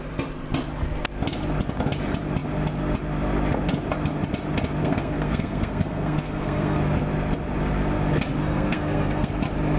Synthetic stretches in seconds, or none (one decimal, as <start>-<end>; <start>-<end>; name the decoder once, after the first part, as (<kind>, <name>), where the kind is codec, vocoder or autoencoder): 4.8-6.8 (codec, SNAC); 8.4-9.3